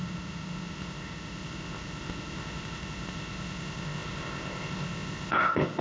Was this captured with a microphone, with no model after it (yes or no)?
no